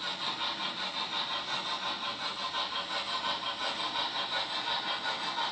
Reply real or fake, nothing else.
real